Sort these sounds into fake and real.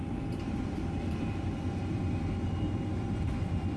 real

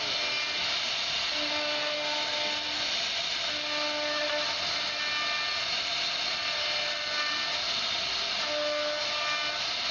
real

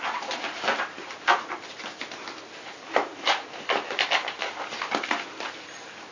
real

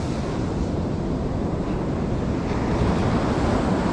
real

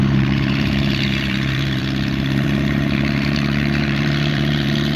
fake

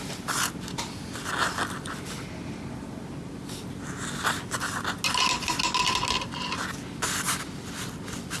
real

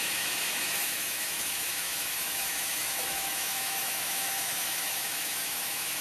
fake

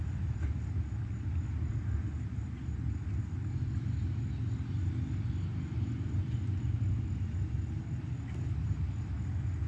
real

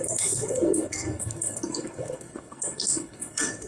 fake